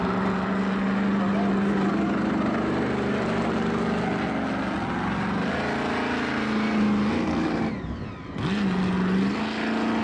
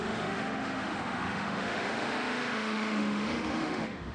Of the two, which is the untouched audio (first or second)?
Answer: first